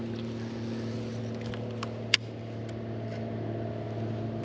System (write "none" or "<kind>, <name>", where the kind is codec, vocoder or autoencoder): none